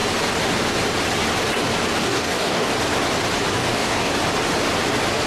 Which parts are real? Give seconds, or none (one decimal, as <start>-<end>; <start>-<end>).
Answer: 0.0-2.0; 2.7-3.5; 4.1-5.3